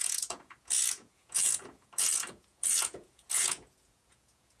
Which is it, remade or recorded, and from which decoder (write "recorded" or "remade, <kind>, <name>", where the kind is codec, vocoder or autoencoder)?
remade, vocoder, Vocos